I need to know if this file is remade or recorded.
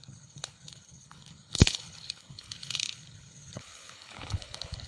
remade